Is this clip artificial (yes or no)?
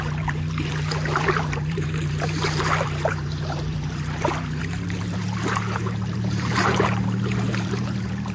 yes